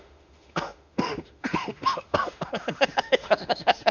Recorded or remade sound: remade